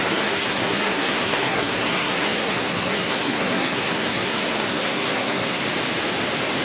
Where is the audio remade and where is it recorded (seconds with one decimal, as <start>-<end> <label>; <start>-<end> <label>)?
0.0-5.6 remade; 5.6-6.6 recorded